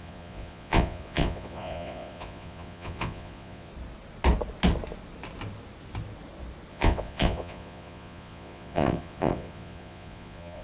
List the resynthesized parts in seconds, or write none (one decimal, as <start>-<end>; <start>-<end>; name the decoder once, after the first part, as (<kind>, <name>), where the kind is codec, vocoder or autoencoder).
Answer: 0.0-3.7 (vocoder, Vocos); 6.7-10.6